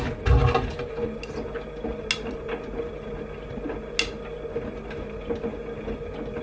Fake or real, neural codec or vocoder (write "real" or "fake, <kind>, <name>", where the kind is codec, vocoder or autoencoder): real